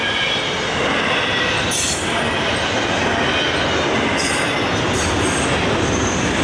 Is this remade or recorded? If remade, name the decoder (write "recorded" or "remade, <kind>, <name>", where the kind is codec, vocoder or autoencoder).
recorded